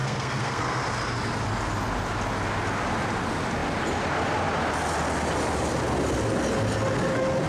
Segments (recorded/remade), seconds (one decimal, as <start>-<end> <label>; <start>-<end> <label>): 0.0-0.8 remade; 0.8-7.5 recorded